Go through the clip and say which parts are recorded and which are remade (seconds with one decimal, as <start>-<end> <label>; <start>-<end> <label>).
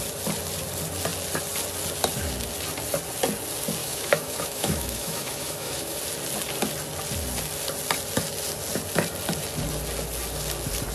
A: 0.0-3.8 recorded; 3.8-6.0 remade; 6.0-10.9 recorded